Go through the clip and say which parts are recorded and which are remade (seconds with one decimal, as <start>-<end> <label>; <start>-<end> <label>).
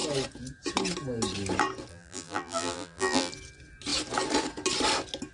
0.0-1.9 recorded; 1.9-3.3 remade; 3.3-5.3 recorded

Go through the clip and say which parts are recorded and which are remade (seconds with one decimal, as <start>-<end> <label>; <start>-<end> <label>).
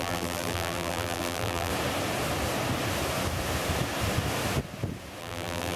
0.0-1.7 remade; 1.7-5.2 recorded; 5.2-5.8 remade